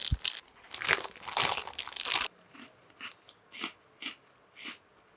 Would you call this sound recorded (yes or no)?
yes